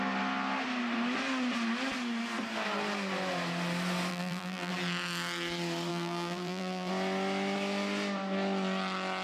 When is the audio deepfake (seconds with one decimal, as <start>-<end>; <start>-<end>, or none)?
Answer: 4.1-4.7; 5.9-6.9